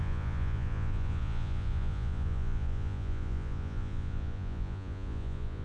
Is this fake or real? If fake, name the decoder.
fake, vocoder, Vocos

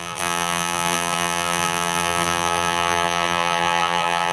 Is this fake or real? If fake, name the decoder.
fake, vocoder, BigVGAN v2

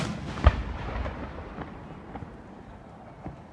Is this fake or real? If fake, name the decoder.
real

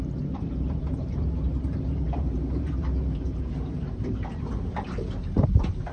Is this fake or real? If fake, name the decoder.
fake, vocoder, BigVGAN v2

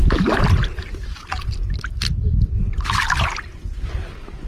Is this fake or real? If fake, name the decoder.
real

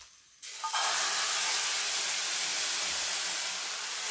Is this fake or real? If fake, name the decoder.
real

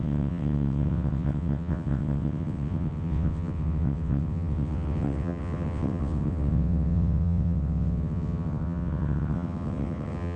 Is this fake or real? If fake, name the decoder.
fake, vocoder, WaveNeXt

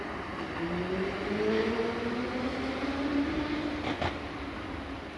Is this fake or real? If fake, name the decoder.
real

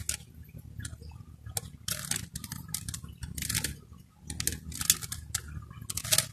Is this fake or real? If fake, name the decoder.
real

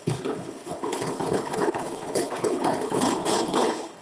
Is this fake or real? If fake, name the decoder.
fake, codec, HILCodec